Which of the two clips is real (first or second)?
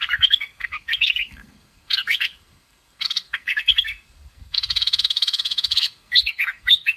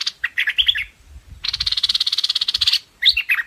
second